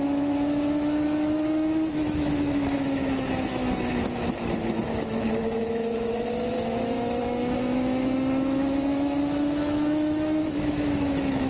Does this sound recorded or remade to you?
remade